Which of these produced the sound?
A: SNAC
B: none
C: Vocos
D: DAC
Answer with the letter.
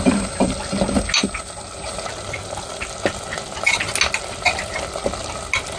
B